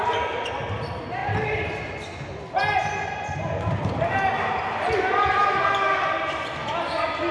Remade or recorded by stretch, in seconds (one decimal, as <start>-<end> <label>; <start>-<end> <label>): 0.0-7.3 recorded